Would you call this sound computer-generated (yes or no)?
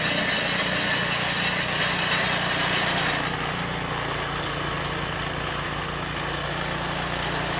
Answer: no